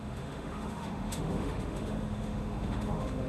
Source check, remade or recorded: remade